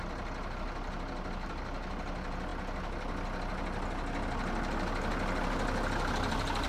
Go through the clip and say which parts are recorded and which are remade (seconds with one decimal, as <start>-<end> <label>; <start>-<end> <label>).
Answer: 0.0-6.7 recorded

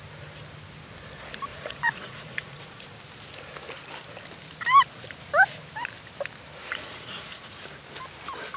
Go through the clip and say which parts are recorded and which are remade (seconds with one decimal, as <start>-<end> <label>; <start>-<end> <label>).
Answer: 0.0-1.5 recorded; 1.5-2.8 remade; 2.8-6.6 recorded; 6.6-7.6 remade; 7.6-8.6 recorded

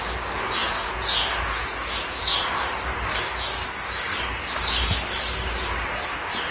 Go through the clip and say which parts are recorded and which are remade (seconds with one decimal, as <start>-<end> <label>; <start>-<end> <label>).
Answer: 0.0-0.6 recorded; 0.6-2.4 remade; 2.4-6.5 recorded